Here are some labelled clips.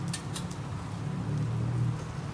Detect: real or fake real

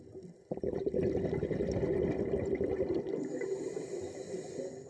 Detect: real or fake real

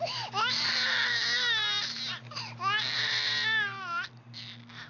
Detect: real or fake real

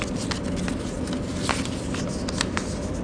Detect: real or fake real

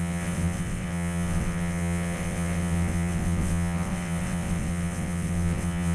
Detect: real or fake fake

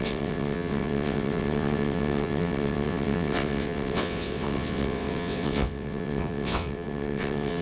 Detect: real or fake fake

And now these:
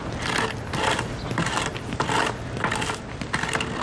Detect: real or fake real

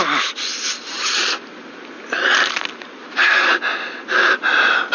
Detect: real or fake real